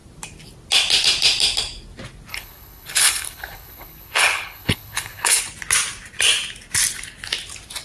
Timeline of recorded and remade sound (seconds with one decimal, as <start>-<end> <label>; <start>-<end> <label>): 0.0-2.3 recorded; 2.3-5.4 remade; 5.4-7.8 recorded